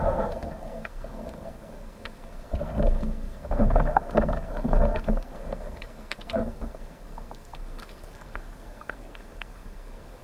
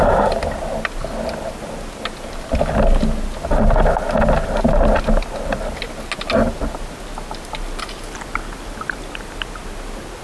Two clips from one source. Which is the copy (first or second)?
first